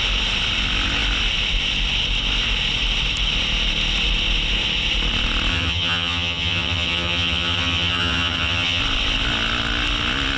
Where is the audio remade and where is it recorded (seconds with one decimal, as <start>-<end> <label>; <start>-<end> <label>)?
0.0-5.5 recorded; 5.5-8.8 remade; 8.8-10.4 recorded